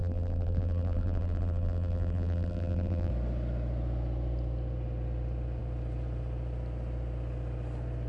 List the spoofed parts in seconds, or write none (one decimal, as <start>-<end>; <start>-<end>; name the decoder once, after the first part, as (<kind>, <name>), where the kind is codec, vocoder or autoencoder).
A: 0.0-3.1 (vocoder, BigVGAN v2)